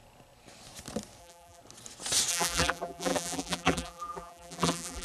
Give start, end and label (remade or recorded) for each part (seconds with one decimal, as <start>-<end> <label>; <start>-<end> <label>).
0.0-1.2 recorded; 1.2-1.6 remade; 1.6-2.3 recorded; 2.3-5.0 remade